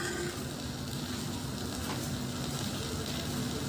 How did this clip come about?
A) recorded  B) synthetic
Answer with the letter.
A